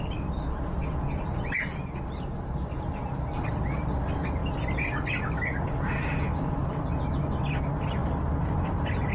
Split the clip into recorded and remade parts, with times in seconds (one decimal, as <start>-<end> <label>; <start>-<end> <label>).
0.0-9.1 recorded